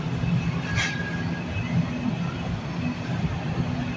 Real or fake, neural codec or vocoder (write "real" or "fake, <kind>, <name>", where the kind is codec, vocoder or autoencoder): real